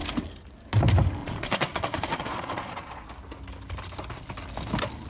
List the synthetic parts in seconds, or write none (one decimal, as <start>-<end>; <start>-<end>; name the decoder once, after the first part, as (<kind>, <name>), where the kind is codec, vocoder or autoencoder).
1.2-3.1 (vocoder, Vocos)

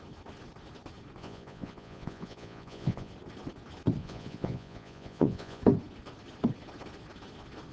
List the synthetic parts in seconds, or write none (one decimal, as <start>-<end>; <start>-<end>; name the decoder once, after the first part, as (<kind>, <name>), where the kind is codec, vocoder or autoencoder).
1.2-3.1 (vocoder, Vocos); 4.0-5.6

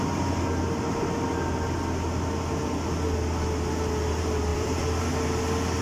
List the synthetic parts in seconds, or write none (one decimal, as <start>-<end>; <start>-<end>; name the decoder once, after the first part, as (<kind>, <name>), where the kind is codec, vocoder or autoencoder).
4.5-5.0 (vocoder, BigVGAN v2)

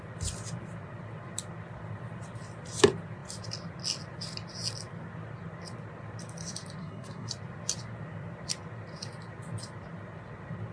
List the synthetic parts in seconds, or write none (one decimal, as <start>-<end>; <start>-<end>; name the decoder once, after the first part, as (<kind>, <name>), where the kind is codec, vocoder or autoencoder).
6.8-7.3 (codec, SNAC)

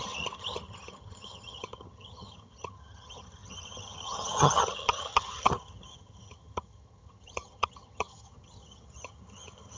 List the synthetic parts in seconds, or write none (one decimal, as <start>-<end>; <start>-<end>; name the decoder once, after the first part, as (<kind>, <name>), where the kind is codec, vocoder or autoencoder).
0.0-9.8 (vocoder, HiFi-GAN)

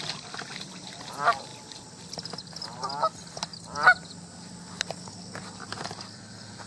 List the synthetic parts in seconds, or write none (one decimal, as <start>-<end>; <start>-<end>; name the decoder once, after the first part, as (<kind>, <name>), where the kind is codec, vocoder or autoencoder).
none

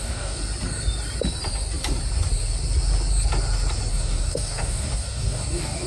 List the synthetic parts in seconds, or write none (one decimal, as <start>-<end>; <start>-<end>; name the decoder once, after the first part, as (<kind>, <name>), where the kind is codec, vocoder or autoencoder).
0.0-0.4 (codec, DAC); 3.9-5.9